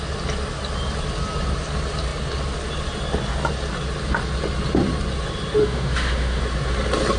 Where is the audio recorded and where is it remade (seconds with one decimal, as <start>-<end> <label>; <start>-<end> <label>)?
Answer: 0.0-5.6 recorded; 5.6-6.4 remade; 6.4-7.2 recorded